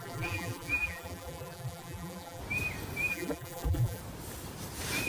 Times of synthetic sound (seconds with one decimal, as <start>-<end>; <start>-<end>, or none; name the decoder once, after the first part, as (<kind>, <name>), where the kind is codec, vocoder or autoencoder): 0.0-2.4 (vocoder, BigVGAN v2); 3.1-4.0